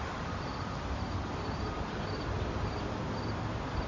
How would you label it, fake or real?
real